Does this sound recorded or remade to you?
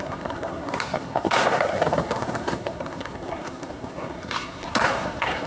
remade